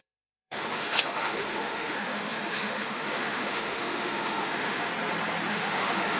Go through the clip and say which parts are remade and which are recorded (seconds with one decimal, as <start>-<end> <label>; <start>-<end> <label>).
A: 0.0-4.9 remade; 4.9-5.5 recorded; 5.5-6.2 remade